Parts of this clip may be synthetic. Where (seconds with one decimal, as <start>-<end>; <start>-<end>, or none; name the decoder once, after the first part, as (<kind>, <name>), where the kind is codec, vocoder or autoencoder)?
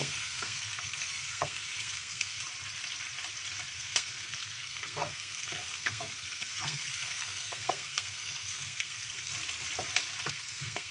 0.0-2.4 (codec, SNAC); 3.7-9.3; 10.3-10.9